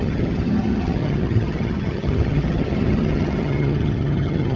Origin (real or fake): fake